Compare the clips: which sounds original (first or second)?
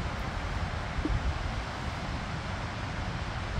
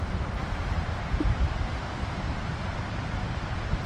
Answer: first